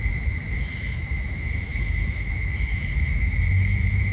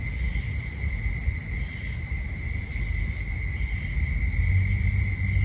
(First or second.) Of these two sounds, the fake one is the first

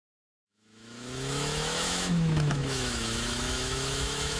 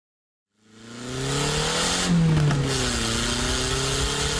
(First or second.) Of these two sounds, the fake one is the first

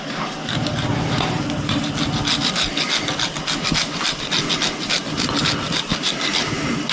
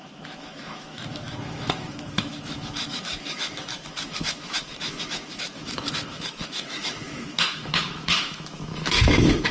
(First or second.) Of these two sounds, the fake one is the second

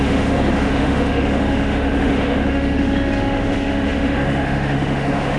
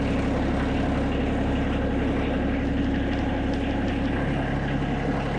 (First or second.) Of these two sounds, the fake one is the first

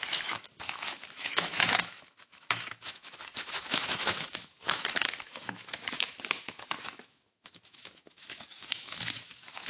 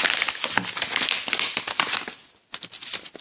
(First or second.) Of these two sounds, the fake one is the first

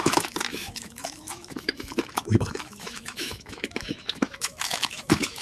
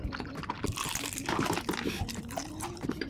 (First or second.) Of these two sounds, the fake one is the first